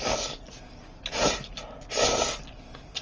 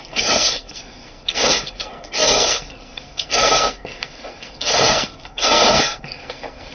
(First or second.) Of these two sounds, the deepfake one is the second